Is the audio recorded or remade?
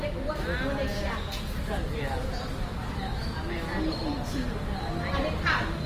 recorded